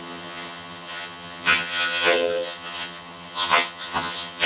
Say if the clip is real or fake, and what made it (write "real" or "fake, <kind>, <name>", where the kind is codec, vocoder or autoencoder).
fake, vocoder, HiFi-GAN